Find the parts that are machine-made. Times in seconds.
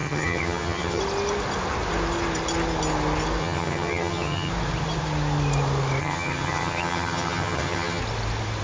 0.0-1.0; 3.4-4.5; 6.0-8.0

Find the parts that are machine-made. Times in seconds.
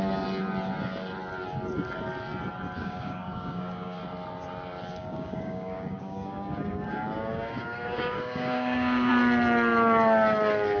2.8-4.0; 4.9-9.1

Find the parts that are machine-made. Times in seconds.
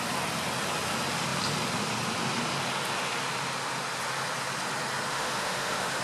5.1-6.0